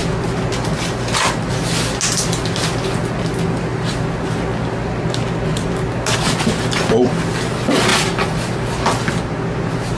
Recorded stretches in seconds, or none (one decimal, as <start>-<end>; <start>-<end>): 0.0-10.0